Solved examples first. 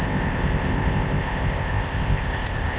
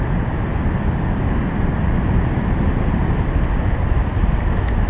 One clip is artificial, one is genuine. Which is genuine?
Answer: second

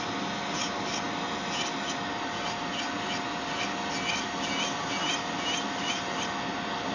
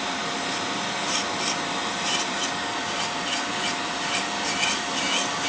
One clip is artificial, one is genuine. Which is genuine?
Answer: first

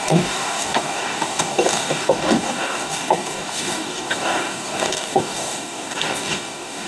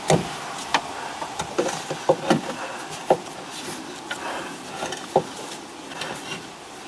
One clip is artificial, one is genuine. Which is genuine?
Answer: second